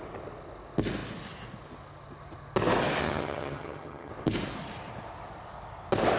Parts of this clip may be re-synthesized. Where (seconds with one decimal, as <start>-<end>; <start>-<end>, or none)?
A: 3.0-4.1